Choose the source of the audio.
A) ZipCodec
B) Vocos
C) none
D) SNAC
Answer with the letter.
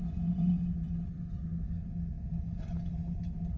C